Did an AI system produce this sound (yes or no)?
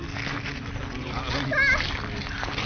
no